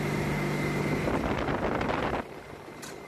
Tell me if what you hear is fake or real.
real